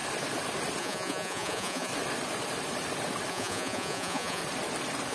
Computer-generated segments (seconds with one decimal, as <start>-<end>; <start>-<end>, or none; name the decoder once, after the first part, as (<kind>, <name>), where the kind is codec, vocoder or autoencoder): 0.8-1.9 (vocoder, Vocos); 3.3-4.4